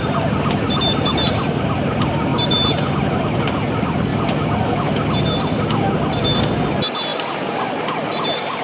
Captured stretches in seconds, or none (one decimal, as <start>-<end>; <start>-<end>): 0.0-4.1; 4.7-7.1; 7.8-8.6